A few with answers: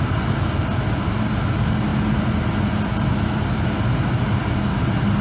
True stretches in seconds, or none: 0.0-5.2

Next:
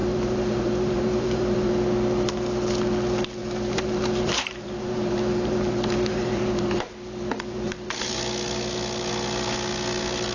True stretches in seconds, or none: 1.7-3.4; 8.2-10.3

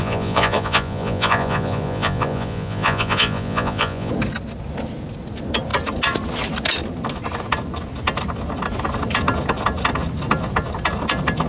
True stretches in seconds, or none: 4.1-11.5

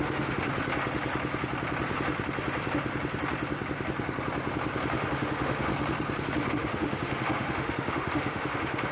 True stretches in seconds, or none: 0.5-5.0; 5.7-6.5

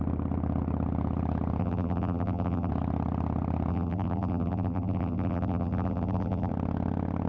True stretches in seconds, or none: 0.0-1.6; 2.7-3.7; 6.5-7.3

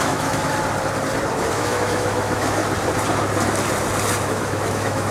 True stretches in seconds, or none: 0.4-1.5; 2.6-4.2

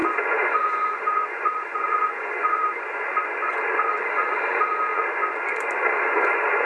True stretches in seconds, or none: none